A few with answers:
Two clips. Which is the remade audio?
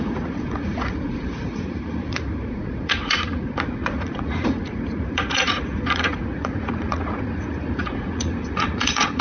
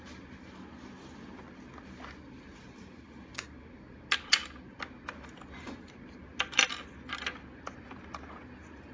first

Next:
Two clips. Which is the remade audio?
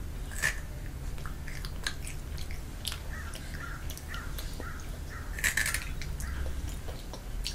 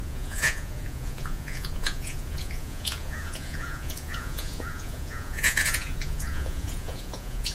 second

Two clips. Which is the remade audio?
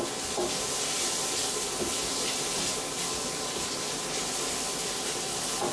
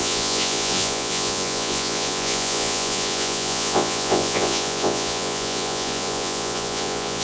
second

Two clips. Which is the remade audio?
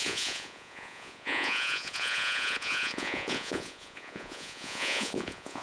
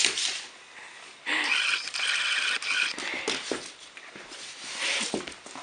first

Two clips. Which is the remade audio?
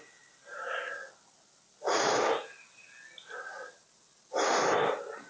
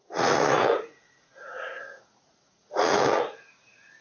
second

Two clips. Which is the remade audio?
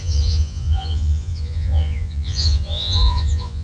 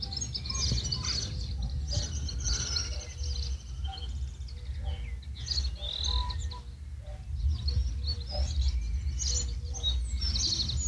first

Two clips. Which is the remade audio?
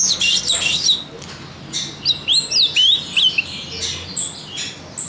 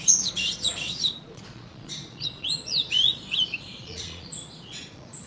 second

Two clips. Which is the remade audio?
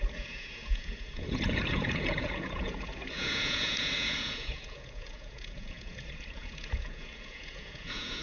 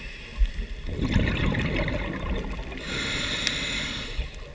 first